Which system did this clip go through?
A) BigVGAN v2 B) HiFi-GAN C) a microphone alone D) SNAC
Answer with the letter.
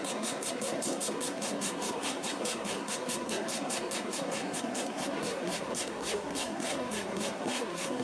D